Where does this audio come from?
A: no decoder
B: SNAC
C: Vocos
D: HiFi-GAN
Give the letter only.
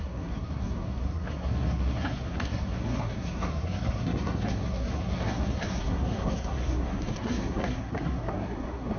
B